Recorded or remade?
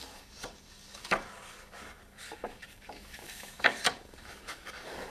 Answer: remade